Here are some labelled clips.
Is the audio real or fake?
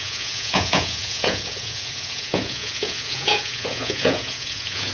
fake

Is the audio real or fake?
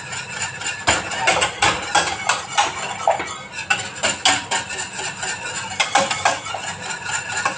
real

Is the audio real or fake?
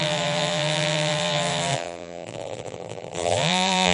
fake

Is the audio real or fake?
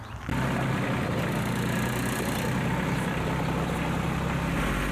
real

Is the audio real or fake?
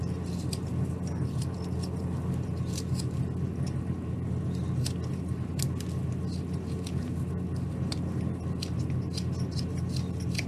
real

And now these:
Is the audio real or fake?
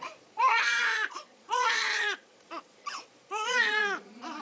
fake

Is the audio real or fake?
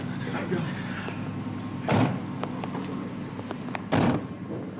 real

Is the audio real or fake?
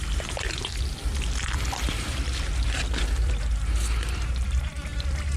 real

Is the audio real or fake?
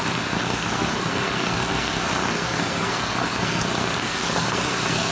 fake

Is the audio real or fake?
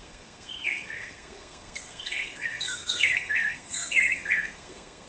fake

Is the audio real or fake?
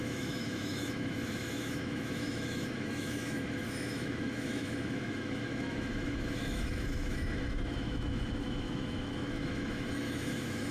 fake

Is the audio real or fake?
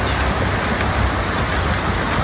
real